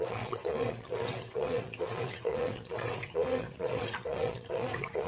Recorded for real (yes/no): no